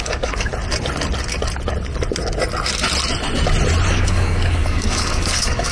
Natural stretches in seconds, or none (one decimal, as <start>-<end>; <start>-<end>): 0.5-3.9